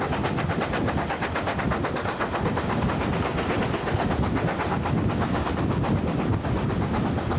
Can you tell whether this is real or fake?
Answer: real